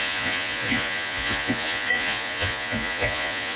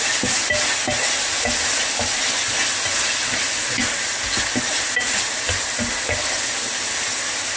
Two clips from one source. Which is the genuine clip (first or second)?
second